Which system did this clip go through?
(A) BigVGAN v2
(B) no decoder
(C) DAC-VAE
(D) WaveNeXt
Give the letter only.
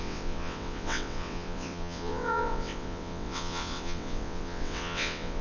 D